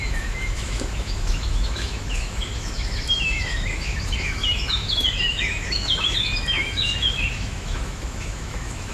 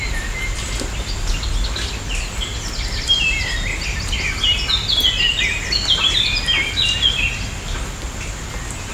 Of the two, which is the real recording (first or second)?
second